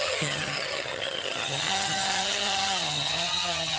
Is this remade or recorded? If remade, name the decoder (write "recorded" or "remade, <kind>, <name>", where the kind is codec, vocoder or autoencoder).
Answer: remade, vocoder, HiFi-GAN